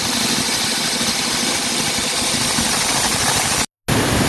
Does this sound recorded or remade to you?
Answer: recorded